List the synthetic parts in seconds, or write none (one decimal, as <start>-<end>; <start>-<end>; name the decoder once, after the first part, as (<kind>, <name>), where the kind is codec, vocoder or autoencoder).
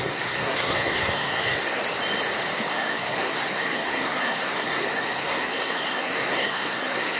0.0-1.8 (codec, SNAC); 2.7-7.2